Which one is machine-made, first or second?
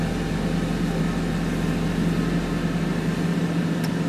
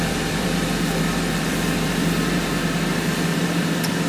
second